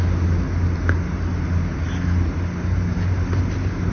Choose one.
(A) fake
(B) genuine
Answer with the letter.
B